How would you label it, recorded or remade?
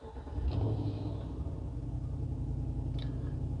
recorded